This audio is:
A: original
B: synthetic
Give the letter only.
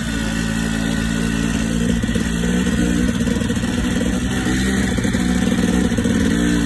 A